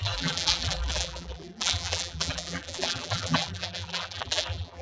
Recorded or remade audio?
remade